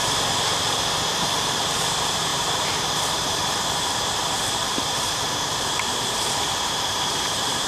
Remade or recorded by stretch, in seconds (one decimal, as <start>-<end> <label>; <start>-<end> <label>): 0.0-0.9 recorded; 0.9-7.7 remade